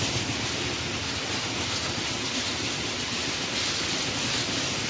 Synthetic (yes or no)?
no